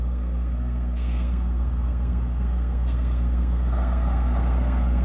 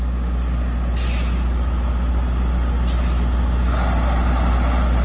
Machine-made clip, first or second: first